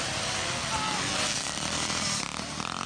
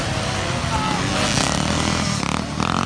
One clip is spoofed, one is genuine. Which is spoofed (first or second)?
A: first